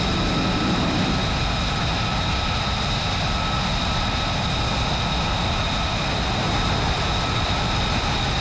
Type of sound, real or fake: real